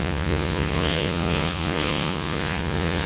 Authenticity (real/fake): fake